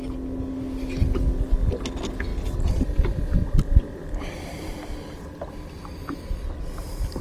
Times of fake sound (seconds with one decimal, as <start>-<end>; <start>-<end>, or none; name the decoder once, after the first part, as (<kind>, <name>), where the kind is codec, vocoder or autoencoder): none

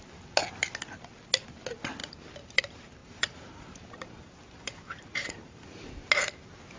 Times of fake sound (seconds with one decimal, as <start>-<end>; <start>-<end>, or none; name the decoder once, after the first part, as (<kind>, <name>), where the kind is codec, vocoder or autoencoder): 3.0-5.9 (vocoder, BigVGAN v2)

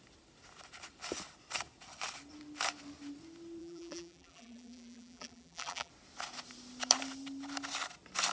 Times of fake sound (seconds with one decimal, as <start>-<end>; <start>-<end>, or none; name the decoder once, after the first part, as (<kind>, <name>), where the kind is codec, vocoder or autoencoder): 3.6-5.9 (vocoder, BigVGAN v2)

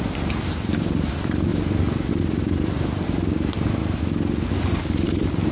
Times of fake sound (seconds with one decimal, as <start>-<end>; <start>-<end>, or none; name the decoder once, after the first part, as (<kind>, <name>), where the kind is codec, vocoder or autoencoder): 0.0-1.5 (vocoder, BigVGAN v2); 2.1-3.8; 4.5-5.5

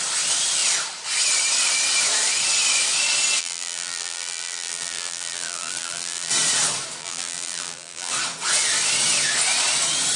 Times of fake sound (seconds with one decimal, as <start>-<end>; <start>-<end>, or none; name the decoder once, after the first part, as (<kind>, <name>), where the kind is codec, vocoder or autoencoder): 3.4-6.3 (vocoder, BigVGAN v2); 7.0-8.1

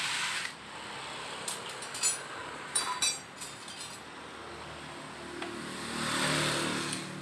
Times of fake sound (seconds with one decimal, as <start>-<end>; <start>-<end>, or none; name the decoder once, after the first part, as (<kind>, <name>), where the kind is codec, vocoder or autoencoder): 2.4-3.0 (vocoder, BigVGAN v2)